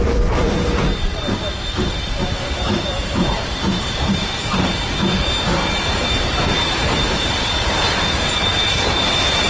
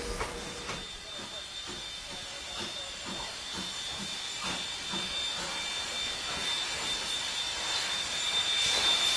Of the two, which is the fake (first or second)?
first